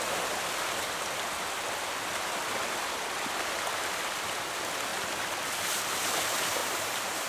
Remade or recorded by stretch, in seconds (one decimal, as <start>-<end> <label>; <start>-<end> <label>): 0.0-6.6 recorded; 6.6-7.3 remade